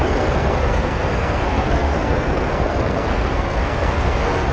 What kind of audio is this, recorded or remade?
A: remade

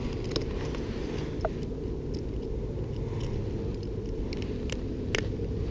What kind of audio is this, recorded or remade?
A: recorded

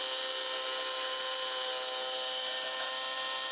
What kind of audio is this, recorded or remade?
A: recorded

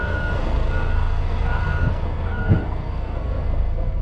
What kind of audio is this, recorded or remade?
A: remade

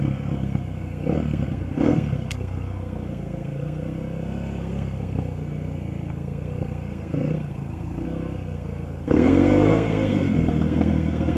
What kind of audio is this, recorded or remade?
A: remade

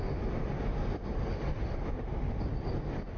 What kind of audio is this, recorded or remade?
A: recorded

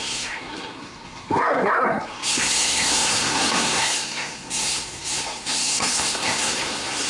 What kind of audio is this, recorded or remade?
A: remade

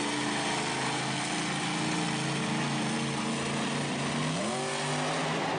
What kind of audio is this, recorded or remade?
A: recorded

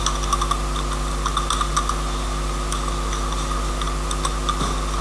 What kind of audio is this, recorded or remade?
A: recorded